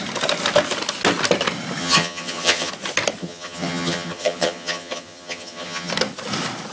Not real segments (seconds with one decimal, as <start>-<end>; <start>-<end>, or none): 1.8-2.7; 3.2-5.9